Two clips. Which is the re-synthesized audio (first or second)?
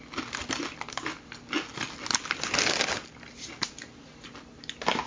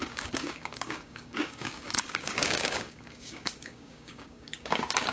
second